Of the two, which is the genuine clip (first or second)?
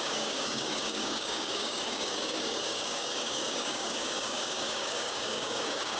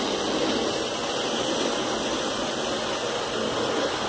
second